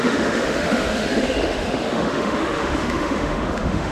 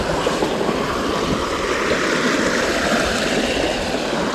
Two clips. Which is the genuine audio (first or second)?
second